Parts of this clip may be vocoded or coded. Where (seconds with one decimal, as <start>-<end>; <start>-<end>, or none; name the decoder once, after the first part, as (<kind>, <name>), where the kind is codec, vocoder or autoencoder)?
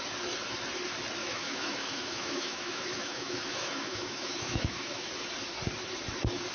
1.2-5.1 (autoencoder, DAC-VAE)